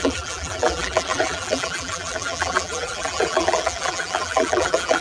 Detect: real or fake fake